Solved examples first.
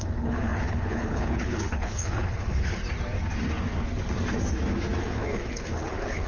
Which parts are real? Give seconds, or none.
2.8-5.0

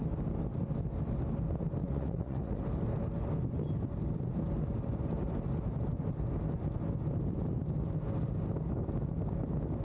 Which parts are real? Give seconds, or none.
0.0-1.8; 2.6-9.8

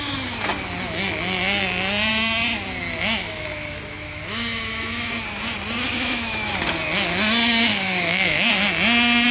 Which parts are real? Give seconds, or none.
0.0-3.2; 5.1-5.9; 6.5-7.7; 8.5-9.3

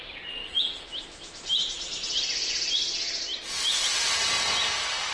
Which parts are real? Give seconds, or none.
0.0-0.4; 2.1-5.1

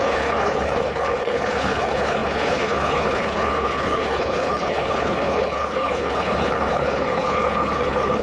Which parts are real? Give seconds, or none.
none

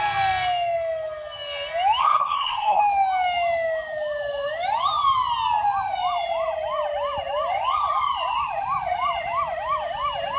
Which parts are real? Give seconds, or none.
0.0-2.0; 2.8-10.4

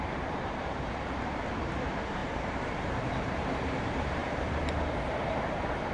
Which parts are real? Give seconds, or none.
none

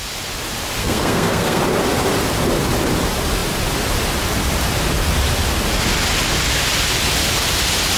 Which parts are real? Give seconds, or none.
0.0-0.8; 1.6-8.0